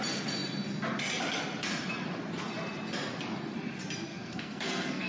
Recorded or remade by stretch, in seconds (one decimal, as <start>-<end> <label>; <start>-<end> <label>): 0.0-4.1 recorded; 4.1-5.1 remade